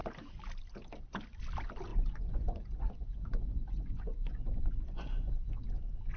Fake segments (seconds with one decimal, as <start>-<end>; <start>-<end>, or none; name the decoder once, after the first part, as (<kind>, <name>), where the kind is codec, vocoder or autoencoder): 1.9-5.6 (vocoder, Vocos)